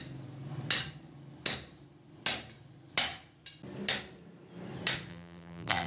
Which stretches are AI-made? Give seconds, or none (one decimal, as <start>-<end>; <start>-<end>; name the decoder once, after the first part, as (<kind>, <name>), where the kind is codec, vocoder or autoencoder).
5.1-5.9 (vocoder, BigVGAN v2)